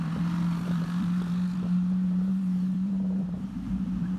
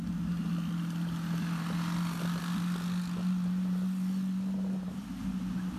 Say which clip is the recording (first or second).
second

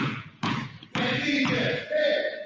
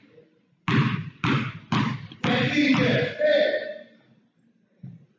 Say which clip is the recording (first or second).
second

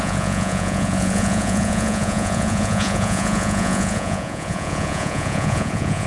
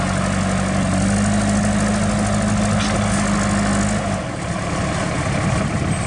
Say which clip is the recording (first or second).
second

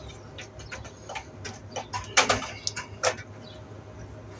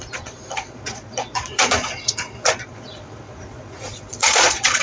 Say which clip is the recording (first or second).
first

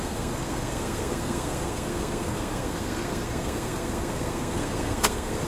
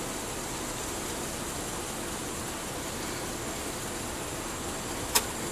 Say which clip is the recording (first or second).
second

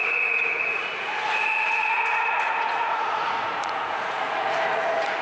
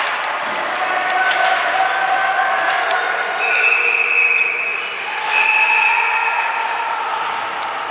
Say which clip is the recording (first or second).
second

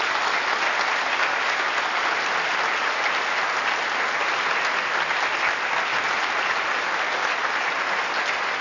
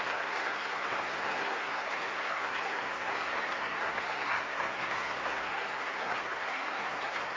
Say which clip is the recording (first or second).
first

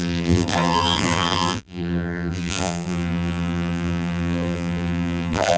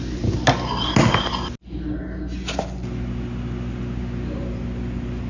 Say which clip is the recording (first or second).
second